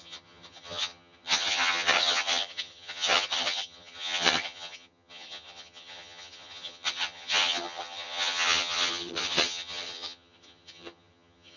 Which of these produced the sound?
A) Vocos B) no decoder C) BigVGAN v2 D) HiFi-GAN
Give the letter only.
D